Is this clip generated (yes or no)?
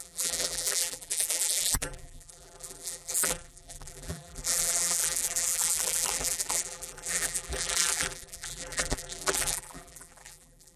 yes